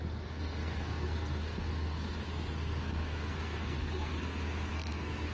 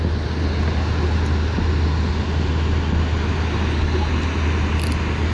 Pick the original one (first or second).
second